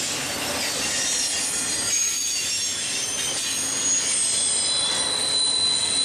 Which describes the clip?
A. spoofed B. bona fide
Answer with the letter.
B